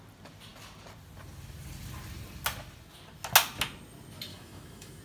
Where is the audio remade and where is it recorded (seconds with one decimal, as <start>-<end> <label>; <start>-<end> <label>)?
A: 0.0-4.3 recorded; 4.3-5.0 remade